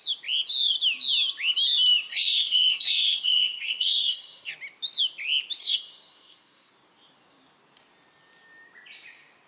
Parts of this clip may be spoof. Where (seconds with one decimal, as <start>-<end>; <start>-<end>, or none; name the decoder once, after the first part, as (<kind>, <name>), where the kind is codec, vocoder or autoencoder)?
2.1-4.5 (codec, SNAC); 5.6-6.7